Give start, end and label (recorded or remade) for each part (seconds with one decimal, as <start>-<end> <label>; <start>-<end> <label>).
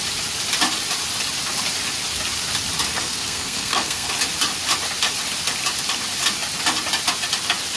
0.0-2.9 recorded; 2.9-4.1 remade; 4.1-7.8 recorded